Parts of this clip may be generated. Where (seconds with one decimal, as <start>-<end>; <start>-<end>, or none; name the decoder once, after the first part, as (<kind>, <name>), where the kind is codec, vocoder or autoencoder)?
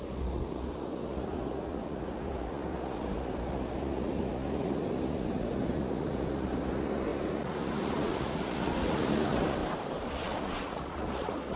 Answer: 0.0-9.6 (vocoder, Vocos); 10.1-11.6